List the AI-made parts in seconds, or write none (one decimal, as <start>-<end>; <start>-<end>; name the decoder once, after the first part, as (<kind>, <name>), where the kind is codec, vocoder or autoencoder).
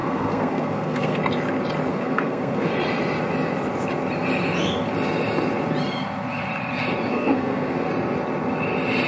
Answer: 0.0-1.2 (codec, SNAC); 1.9-2.7; 7.1-7.9